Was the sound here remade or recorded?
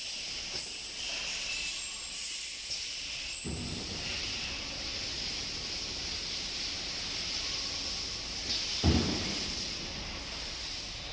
recorded